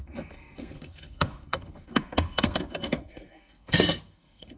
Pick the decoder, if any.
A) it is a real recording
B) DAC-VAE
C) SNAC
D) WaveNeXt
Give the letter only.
C